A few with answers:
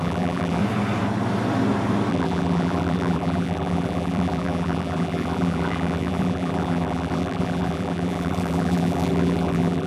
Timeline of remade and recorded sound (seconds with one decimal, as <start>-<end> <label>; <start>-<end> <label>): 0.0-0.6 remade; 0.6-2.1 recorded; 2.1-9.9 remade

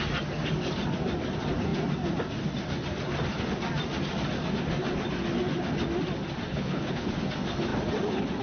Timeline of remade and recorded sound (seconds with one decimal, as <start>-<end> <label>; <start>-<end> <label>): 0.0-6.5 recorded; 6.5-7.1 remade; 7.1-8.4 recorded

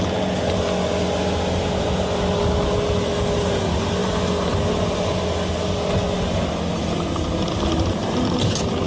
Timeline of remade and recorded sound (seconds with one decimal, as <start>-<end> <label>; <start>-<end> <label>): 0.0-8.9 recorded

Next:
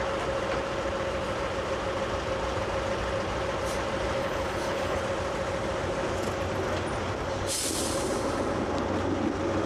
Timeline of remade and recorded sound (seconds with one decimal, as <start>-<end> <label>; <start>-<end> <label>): 0.0-4.2 recorded; 4.2-5.0 remade; 5.0-9.7 recorded

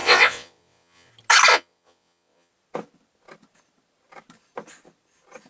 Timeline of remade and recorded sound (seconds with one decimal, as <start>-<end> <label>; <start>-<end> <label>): 0.0-1.1 remade; 1.1-1.5 recorded; 1.5-2.5 remade; 2.5-5.5 recorded

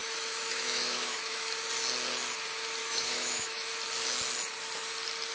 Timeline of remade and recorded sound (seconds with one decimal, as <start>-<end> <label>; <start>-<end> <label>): 0.0-1.5 remade; 1.5-2.8 recorded; 2.8-3.7 remade; 3.7-5.3 recorded

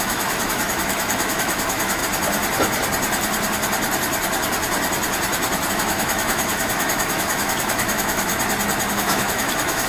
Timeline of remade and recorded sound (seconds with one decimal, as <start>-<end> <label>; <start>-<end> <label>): 0.0-2.0 remade; 2.0-5.7 recorded; 5.7-8.3 remade; 8.3-8.9 recorded; 8.9-9.9 remade